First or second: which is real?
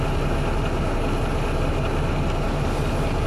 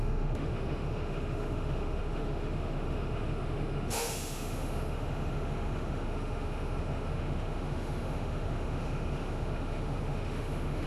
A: first